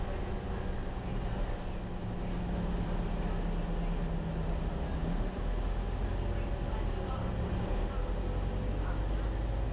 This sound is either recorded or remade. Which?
recorded